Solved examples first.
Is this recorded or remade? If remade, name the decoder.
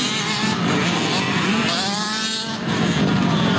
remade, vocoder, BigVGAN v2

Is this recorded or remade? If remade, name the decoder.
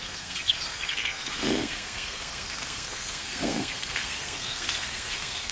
remade, codec, SNAC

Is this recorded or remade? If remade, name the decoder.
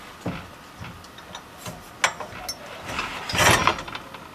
recorded